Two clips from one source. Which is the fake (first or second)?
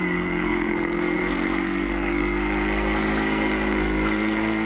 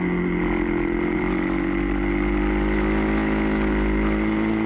first